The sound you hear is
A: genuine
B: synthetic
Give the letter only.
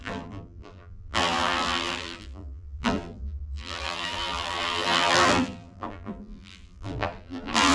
B